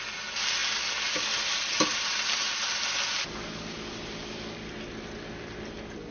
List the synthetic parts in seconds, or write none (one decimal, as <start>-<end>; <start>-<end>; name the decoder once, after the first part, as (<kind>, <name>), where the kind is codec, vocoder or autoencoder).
none